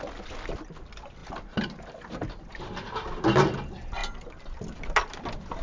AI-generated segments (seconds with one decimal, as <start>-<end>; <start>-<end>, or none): none